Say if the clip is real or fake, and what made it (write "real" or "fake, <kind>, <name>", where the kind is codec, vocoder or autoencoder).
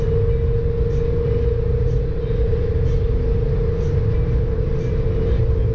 real